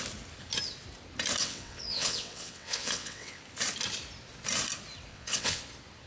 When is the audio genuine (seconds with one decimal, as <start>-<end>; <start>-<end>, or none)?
0.0-1.4; 3.4-5.1; 5.6-6.1